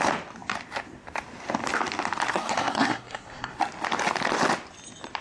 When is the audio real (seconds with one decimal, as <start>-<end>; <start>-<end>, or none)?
0.0-2.3; 3.6-5.2